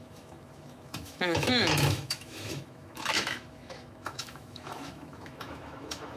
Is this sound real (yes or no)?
no